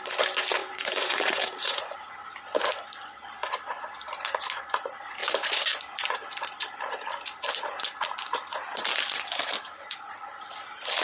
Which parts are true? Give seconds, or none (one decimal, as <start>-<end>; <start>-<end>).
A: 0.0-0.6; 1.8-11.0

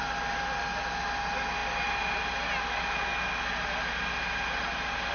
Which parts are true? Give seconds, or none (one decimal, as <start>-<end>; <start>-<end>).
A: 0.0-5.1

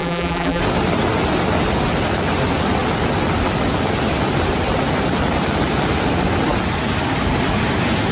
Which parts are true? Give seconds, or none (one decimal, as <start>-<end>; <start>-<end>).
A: 0.6-8.1

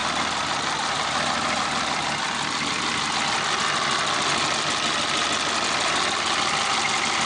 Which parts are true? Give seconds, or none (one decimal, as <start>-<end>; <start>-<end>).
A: 3.1-7.3

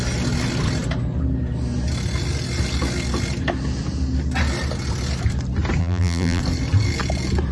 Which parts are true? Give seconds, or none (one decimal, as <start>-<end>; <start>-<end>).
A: 0.0-5.8; 6.4-7.5